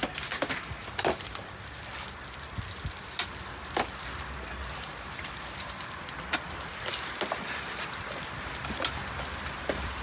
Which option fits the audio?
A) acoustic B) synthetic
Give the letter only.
A